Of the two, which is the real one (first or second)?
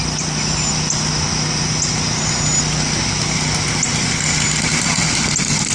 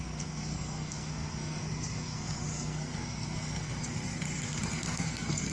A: first